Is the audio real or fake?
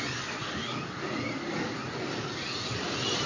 real